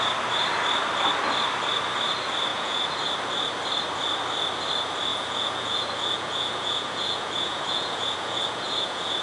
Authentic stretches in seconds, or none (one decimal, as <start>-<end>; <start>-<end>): 0.0-2.5; 3.1-5.1

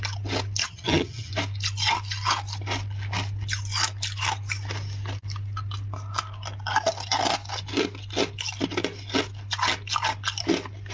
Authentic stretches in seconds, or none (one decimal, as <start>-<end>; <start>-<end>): 0.0-0.6; 1.3-10.9